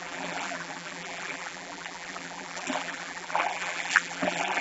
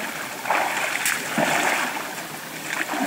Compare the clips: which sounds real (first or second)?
second